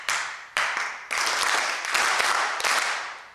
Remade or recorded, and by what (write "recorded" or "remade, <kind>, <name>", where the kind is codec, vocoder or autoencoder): remade, vocoder, BigVGAN v2